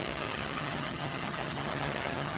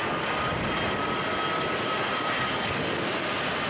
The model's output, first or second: first